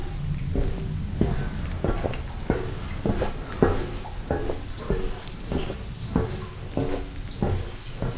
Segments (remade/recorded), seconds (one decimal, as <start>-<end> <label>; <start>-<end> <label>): 0.0-8.2 recorded